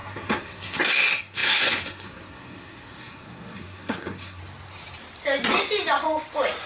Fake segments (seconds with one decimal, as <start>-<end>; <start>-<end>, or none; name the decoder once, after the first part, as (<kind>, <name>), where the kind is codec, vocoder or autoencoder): 0.0-4.4 (codec, SNAC)